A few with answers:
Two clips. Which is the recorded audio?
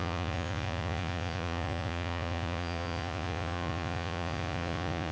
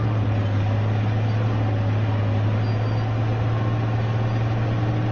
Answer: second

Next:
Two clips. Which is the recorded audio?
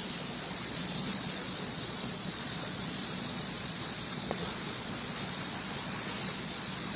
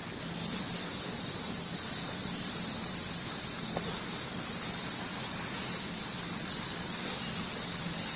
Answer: second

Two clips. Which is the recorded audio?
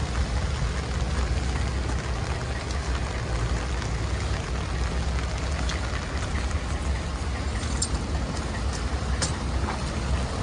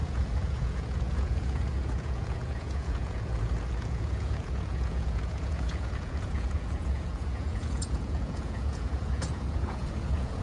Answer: first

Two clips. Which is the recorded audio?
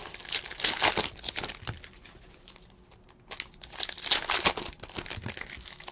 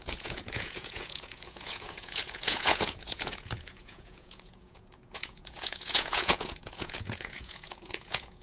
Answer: first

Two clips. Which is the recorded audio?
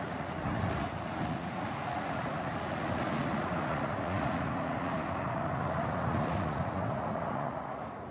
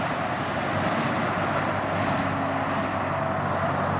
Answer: second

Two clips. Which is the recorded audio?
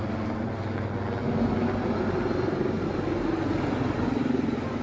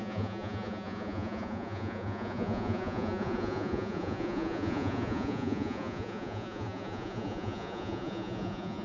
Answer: first